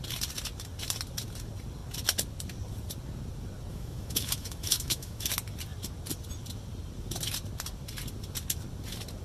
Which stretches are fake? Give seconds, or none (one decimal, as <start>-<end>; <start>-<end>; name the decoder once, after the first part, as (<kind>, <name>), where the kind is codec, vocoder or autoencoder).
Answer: 3.7-5.3 (autoencoder, DAC-VAE)